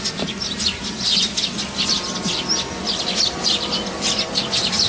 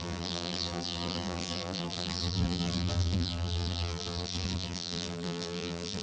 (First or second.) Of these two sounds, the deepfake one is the second